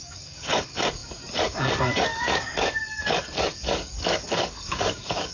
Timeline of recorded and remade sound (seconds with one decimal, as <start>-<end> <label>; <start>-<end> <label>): 0.0-5.3 remade